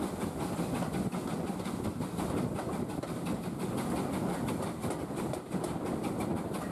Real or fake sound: real